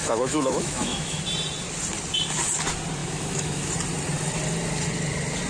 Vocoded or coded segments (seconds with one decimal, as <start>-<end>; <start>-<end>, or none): 0.0-1.2; 3.0-3.7